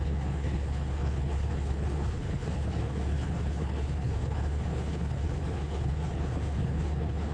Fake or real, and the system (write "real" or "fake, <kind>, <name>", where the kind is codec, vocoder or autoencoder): fake, codec, HILCodec